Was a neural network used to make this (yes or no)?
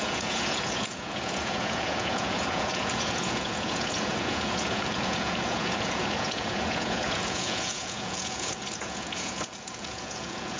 yes